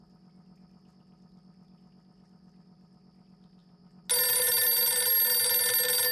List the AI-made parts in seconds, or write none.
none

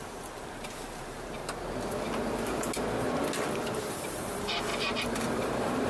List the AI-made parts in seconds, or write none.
0.0-1.4 (vocoder, BigVGAN v2); 3.9-5.9

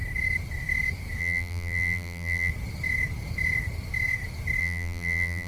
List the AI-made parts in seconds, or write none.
1.2-2.5 (vocoder, BigVGAN v2); 4.6-5.5

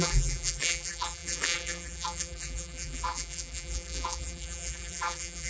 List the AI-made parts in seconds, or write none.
0.0-5.5 (vocoder, BigVGAN v2)

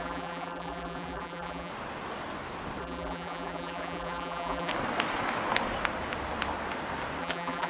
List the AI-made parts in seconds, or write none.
0.0-1.7 (vocoder, BigVGAN v2); 2.8-4.7; 7.2-7.7

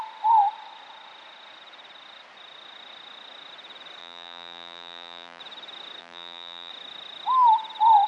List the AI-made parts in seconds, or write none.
4.0-5.4 (vocoder, BigVGAN v2); 6.0-6.7

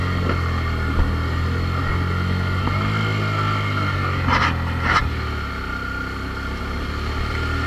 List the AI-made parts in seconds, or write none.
none

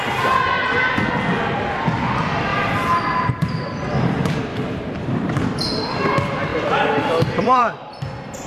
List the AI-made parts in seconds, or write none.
6.5-8.0 (vocoder, BigVGAN v2)